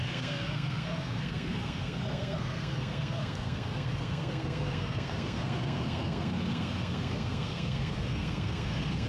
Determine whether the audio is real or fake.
fake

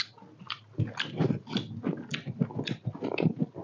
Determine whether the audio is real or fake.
real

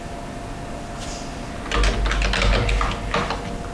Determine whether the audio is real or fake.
real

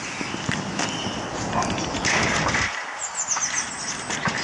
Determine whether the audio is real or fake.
real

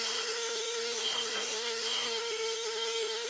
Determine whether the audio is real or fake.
fake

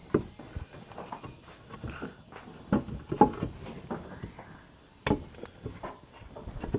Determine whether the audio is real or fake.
real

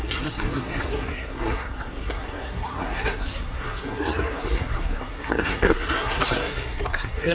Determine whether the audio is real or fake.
fake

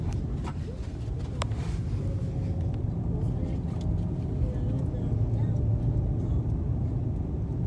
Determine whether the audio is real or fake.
real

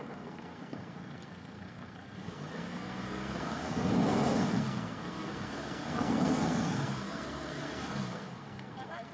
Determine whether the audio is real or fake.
fake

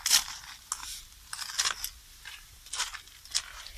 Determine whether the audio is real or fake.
real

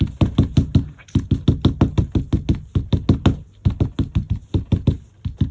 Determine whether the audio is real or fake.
real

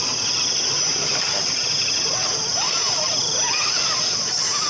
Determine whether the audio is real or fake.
real